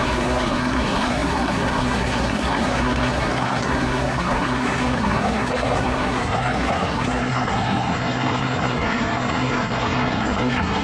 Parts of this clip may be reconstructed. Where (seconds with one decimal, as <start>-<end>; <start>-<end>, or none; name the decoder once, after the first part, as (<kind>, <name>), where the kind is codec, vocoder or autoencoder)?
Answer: 0.0-10.8 (codec, SNAC)